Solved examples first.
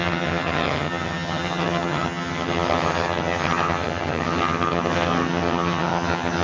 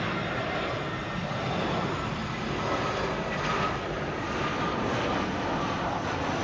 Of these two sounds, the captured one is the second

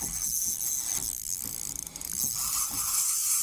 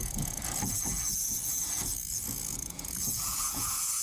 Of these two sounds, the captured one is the first